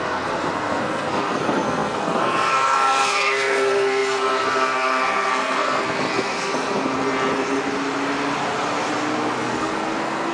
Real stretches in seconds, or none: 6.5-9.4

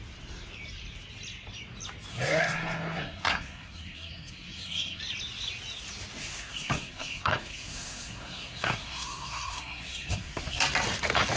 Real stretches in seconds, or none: 0.0-2.1; 5.0-6.2; 10.6-11.4

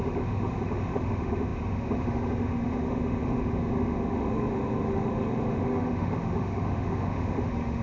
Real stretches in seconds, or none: none

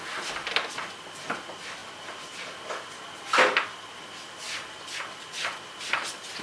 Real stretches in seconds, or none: 0.0-6.4

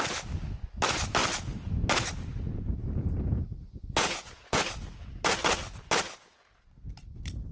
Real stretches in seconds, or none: 0.0-2.8; 4.6-7.5

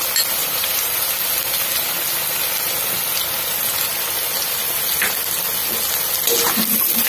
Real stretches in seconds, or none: 0.0-0.4; 1.1-7.1